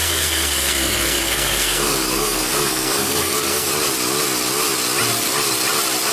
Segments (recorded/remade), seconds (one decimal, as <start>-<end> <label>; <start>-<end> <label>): 0.0-3.7 remade; 3.7-6.1 recorded